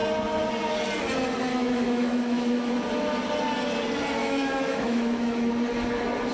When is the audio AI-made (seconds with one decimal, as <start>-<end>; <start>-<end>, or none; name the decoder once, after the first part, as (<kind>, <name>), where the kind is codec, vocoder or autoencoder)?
1.5-2.7 (autoencoder, DAC-VAE); 4.2-5.5